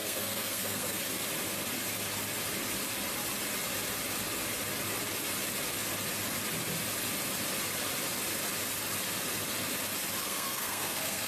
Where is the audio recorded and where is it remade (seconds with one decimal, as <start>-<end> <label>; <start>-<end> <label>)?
0.0-1.0 remade; 1.0-10.2 recorded; 10.2-11.3 remade